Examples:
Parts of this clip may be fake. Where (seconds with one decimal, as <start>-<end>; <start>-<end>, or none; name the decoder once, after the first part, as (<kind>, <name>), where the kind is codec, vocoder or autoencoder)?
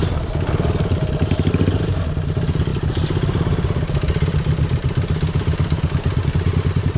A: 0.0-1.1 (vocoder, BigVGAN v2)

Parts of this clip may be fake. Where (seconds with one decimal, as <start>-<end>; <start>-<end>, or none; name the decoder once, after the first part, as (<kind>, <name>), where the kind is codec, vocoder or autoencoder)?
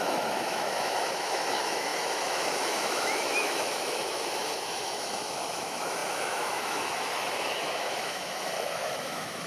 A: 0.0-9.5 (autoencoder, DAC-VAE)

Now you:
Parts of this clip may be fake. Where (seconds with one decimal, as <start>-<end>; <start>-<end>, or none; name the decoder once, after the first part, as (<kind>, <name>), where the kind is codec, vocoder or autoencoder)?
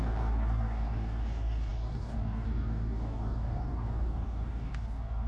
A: 0.0-5.3 (codec, DAC)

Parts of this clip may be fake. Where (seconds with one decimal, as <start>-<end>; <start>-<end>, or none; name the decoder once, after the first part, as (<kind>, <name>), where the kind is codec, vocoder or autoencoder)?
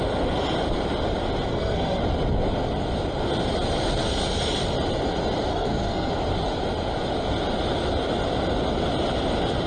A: 1.5-2.0 (codec, SNAC); 5.5-6.1